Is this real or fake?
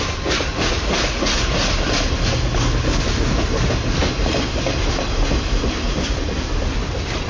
real